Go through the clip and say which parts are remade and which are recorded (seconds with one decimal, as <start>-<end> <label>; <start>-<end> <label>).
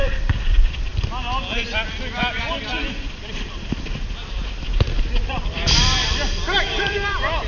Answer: 0.0-0.9 remade; 0.9-5.3 recorded; 5.3-6.0 remade; 6.0-6.8 recorded; 6.8-7.5 remade